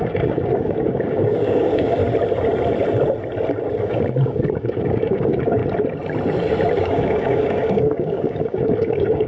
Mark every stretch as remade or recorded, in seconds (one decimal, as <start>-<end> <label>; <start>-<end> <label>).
0.0-2.0 remade; 2.0-3.8 recorded; 3.8-5.6 remade; 5.6-6.8 recorded; 6.8-9.3 remade